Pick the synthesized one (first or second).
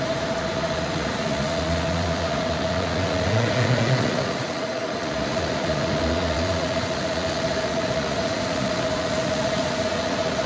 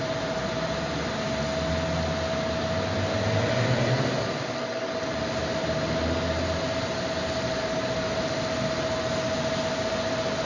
first